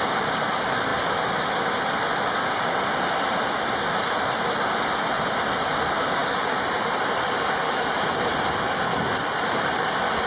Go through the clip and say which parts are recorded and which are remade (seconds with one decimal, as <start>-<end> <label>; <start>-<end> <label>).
0.0-0.9 recorded; 0.9-2.7 remade; 2.7-6.2 recorded; 6.2-8.4 remade; 8.4-10.3 recorded